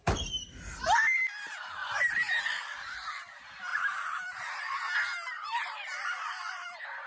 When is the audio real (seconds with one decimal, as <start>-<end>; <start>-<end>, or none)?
0.0-3.7; 4.6-5.1; 6.5-7.1